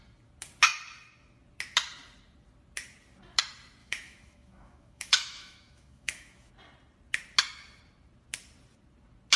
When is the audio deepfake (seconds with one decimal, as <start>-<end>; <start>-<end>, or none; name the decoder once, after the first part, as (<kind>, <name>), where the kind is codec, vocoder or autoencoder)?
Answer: 3.8-6.5 (autoencoder, DAC-VAE)